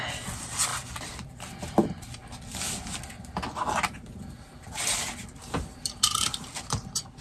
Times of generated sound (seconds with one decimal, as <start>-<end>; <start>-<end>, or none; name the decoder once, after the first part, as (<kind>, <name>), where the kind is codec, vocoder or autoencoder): 0.0-2.2 (vocoder, BigVGAN v2); 6.5-7.2